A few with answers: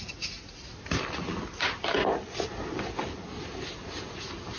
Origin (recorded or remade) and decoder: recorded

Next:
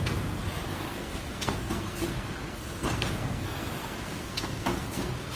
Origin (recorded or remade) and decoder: remade, codec, SNAC